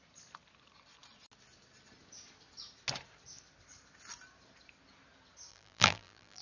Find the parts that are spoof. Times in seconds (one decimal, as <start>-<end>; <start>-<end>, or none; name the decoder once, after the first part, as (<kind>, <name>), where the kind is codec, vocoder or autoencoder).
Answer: 5.5-6.4 (vocoder, BigVGAN v2)